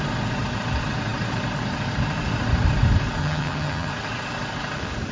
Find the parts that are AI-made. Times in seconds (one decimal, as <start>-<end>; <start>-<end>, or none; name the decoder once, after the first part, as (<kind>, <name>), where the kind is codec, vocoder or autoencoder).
3.2-3.9 (vocoder, HiFi-GAN)